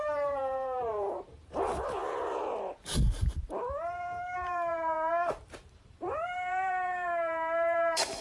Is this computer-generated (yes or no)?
yes